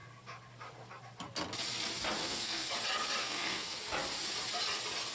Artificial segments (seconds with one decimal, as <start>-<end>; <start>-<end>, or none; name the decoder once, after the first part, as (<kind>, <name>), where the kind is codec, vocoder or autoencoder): 2.2-2.7 (codec, SNAC); 3.2-3.8